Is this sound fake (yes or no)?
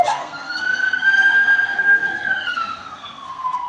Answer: yes